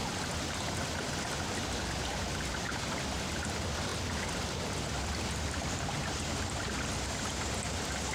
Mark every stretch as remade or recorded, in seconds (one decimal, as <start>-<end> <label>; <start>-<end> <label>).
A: 0.0-8.1 recorded